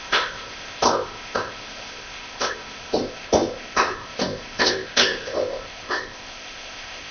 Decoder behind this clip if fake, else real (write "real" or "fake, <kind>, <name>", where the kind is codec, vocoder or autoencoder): fake, codec, ZipCodec